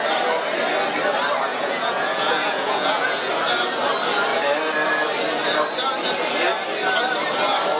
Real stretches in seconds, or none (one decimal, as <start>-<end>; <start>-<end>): 0.0-1.5; 3.3-7.8